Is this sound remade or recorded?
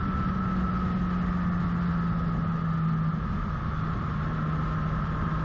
recorded